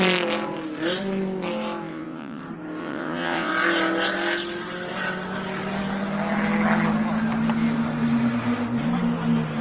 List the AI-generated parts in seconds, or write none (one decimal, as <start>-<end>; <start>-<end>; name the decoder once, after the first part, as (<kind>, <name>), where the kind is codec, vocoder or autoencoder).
1.9-2.4 (vocoder, WaveNeXt); 2.8-3.5